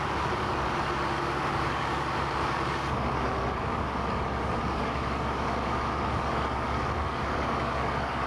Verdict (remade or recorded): remade